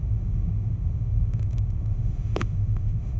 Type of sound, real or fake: fake